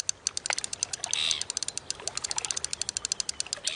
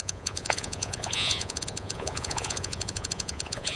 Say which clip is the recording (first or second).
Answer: first